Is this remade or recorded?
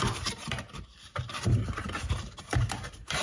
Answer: remade